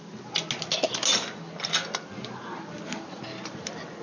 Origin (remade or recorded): recorded